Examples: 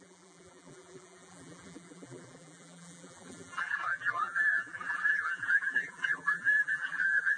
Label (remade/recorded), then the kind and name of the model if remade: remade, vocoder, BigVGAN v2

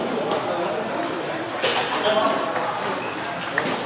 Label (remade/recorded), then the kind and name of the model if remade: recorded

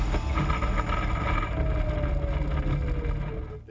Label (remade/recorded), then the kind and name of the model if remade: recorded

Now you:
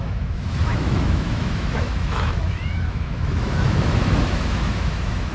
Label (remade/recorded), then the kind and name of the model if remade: remade, autoencoder, DAC-VAE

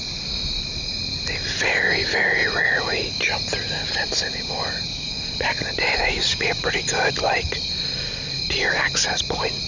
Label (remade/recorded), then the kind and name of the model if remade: recorded